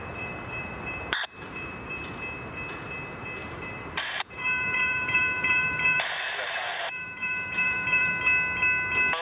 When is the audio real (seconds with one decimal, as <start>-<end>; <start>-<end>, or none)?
2.1-3.4; 8.1-9.2